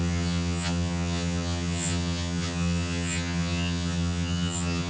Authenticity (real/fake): fake